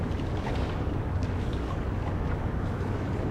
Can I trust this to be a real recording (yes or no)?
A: no